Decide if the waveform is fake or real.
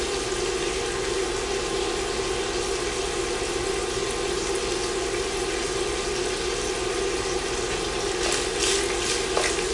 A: real